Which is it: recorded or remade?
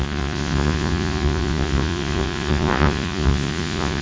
remade